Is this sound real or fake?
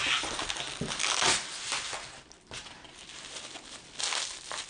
real